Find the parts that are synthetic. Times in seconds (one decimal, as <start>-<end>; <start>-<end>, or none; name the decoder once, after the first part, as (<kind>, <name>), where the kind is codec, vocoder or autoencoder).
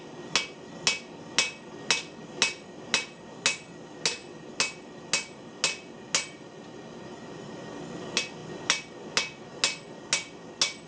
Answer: none